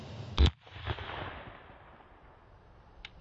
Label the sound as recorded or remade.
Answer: recorded